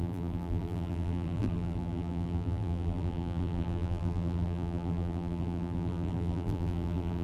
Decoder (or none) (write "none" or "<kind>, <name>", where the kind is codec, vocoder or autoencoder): vocoder, BigVGAN v2